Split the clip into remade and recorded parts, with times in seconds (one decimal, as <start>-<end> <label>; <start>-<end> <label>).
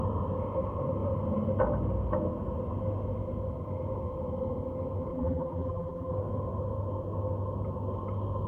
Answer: 0.0-5.1 recorded; 5.1-6.1 remade; 6.1-8.5 recorded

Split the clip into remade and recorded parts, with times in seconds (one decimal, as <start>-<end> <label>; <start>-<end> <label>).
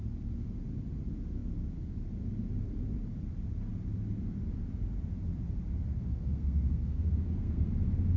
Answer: 0.0-6.1 recorded; 6.1-7.7 remade; 7.7-8.2 recorded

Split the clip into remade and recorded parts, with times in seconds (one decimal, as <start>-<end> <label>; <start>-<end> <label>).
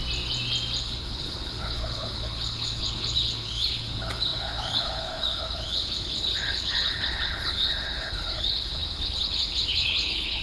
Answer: 0.0-0.8 recorded; 0.8-10.4 remade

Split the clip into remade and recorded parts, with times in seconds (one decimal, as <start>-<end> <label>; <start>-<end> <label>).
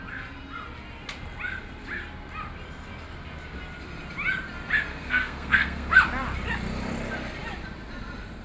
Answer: 0.0-4.9 recorded; 4.9-5.9 remade; 5.9-8.4 recorded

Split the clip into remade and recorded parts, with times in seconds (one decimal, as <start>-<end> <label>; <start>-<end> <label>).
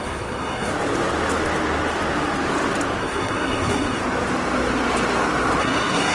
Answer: 0.0-0.7 remade; 0.7-3.0 recorded; 3.0-4.0 remade; 4.0-5.6 recorded; 5.6-6.1 remade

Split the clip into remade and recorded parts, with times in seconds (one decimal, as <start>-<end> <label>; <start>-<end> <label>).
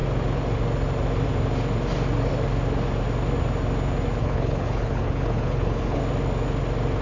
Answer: 0.0-4.2 recorded; 4.2-6.0 remade; 6.0-7.0 recorded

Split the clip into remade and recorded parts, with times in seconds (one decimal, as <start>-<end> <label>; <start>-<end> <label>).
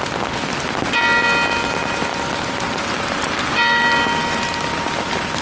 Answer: 0.0-5.4 recorded